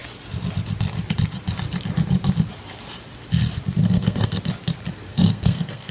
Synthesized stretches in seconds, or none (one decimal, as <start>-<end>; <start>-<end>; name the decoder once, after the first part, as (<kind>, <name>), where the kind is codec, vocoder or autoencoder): 3.8-4.4 (codec, SNAC); 5.1-5.9